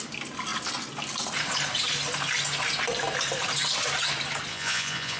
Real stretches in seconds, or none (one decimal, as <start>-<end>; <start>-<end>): 0.0-4.5